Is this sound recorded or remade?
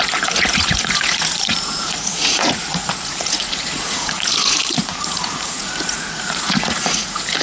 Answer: remade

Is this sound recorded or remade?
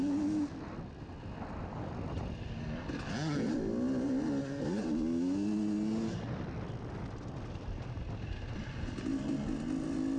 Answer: recorded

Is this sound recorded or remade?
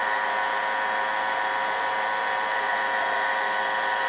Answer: recorded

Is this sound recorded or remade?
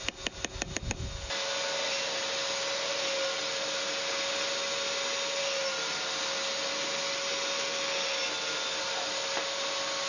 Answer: recorded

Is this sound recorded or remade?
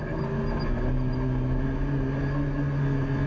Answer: recorded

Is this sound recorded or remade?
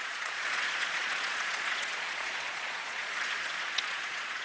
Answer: remade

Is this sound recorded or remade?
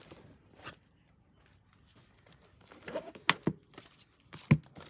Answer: recorded